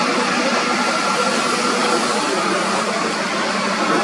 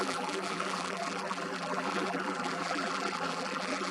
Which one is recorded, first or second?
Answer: first